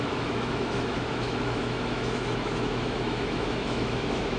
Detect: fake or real fake